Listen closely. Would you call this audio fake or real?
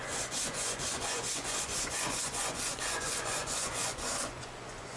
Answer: fake